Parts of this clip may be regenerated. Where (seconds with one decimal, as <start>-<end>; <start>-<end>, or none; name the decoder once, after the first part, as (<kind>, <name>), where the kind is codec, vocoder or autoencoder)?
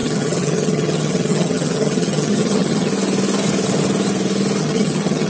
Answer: 0.0-2.9 (vocoder, HiFi-GAN); 4.6-5.3